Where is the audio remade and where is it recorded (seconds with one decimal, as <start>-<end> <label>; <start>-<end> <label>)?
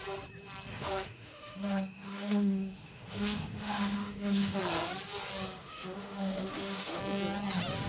0.0-0.7 recorded; 0.7-4.6 remade; 4.6-5.6 recorded; 5.6-7.0 remade; 7.0-7.9 recorded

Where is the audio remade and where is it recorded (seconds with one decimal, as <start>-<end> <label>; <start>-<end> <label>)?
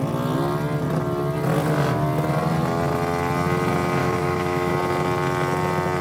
0.0-4.0 recorded; 4.0-4.7 remade; 4.7-6.0 recorded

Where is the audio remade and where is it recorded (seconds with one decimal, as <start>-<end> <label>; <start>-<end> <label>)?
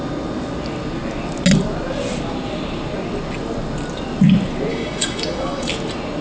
0.0-4.7 recorded; 4.7-5.7 remade; 5.7-6.2 recorded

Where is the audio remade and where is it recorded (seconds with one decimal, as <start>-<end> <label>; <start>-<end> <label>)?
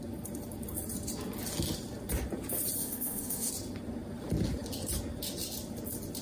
0.0-2.8 recorded; 2.8-3.5 remade; 3.5-6.2 recorded